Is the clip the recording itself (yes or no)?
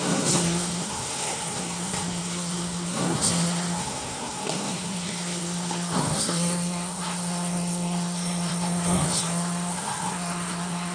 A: no